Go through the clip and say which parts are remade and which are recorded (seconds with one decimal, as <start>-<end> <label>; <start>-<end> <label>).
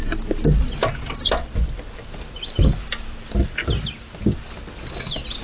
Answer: 0.0-5.4 recorded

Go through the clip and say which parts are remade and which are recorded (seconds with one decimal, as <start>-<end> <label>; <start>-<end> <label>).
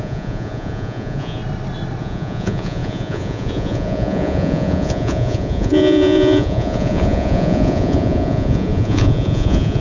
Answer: 0.0-1.4 remade; 1.4-2.0 recorded; 2.0-9.8 remade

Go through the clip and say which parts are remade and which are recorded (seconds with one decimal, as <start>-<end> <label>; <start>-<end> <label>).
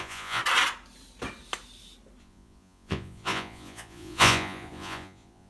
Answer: 0.0-0.4 remade; 0.4-2.2 recorded; 2.2-5.5 remade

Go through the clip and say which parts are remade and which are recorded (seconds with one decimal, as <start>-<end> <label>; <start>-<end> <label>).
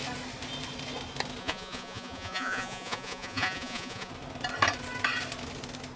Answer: 0.0-1.4 recorded; 1.4-4.1 remade; 4.1-6.0 recorded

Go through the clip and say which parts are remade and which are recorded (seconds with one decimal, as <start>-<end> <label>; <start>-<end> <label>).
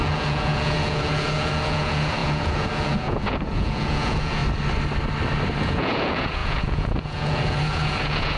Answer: 0.0-4.4 remade; 4.4-5.6 recorded; 5.6-8.4 remade